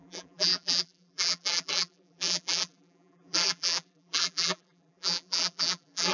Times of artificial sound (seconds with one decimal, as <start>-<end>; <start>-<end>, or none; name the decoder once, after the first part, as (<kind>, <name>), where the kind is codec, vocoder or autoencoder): 0.0-6.1 (vocoder, BigVGAN v2)